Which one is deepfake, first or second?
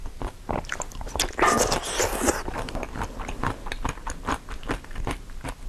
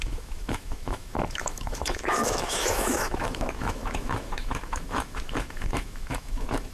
second